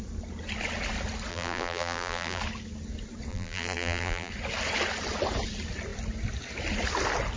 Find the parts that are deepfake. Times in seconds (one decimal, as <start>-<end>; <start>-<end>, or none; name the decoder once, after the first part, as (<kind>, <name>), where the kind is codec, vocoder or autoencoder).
1.3-2.4 (vocoder, BigVGAN v2); 3.3-4.3